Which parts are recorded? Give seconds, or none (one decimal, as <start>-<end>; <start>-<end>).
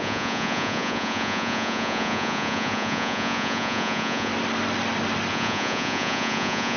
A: 4.3-5.3